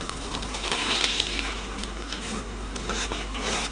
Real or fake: fake